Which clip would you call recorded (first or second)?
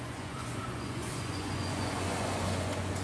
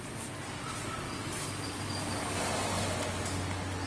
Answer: second